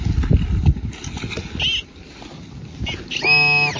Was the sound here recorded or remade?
recorded